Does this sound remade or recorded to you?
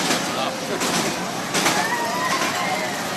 recorded